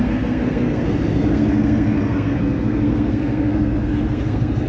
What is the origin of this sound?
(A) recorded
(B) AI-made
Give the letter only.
B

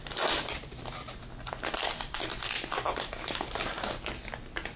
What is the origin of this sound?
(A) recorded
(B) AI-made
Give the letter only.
A